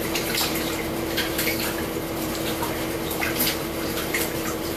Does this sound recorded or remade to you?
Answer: remade